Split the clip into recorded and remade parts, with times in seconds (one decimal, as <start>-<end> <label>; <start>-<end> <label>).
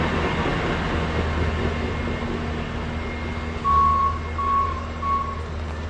0.0-5.9 recorded